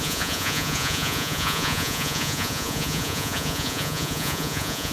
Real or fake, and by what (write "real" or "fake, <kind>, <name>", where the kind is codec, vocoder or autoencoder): fake, vocoder, Vocos